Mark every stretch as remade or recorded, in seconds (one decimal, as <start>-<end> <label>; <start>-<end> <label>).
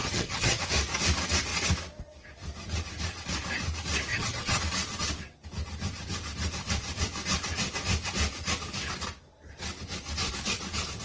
0.0-0.6 remade; 0.6-4.1 recorded; 4.1-4.6 remade; 4.6-11.0 recorded